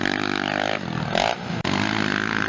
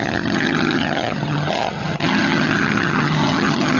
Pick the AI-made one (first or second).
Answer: second